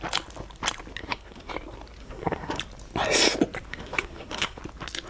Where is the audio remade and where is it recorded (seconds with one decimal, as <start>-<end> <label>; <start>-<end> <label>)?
0.0-1.0 recorded; 1.0-1.5 remade; 1.5-2.0 recorded; 2.0-2.6 remade; 2.6-3.7 recorded; 3.7-4.6 remade; 4.6-5.1 recorded